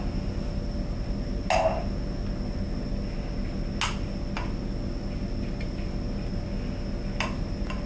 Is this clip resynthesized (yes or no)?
no